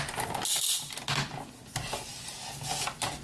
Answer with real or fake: real